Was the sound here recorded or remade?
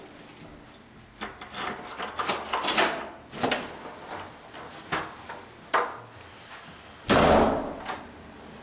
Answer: recorded